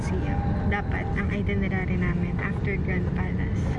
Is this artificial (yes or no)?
no